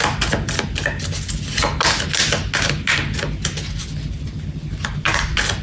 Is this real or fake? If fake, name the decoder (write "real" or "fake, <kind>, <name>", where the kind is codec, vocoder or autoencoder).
real